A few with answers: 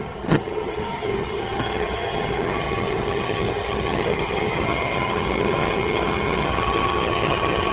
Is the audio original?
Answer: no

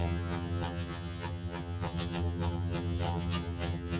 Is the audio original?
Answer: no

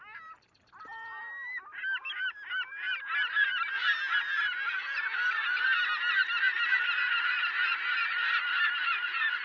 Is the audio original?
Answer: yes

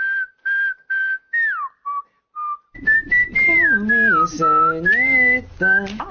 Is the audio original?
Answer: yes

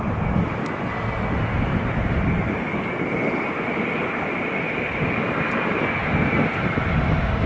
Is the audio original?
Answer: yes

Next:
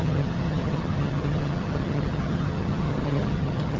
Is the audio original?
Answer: no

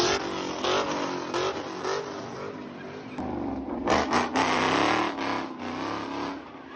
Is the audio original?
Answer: yes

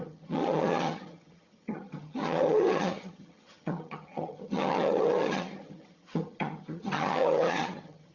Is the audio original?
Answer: no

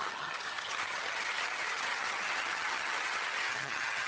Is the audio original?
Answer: no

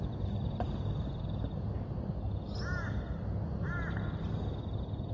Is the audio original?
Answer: yes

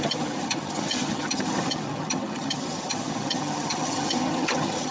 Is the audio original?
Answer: no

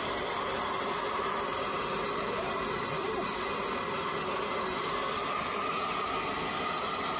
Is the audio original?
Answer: yes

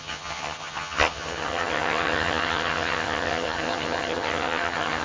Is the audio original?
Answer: no